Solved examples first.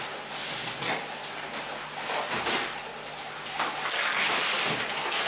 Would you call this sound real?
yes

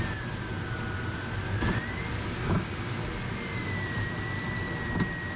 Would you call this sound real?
yes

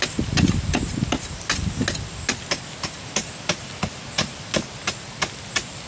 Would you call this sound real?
yes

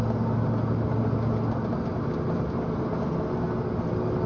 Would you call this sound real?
yes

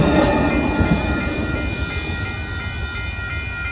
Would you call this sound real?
yes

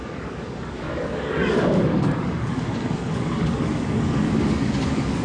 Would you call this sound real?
no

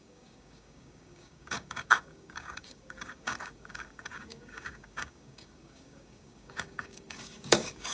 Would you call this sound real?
no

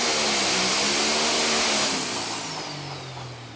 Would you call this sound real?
yes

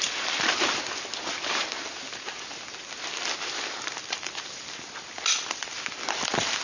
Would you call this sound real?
yes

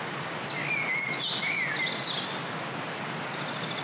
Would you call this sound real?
yes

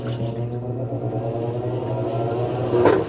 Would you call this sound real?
yes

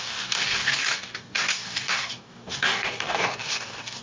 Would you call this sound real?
no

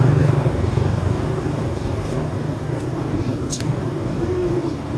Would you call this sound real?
no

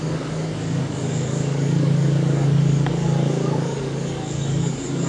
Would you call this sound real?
no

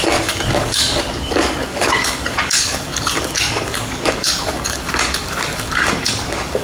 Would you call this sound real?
no